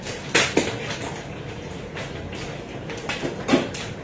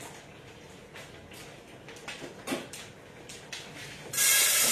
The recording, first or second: second